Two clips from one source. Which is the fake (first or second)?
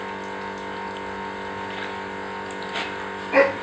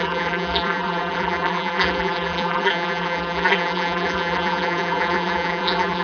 second